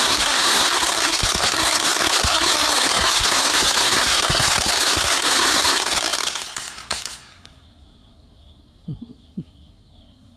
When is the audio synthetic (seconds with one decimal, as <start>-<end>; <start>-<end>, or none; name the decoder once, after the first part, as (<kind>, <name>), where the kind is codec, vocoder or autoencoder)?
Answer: 0.0-10.4 (codec, SNAC)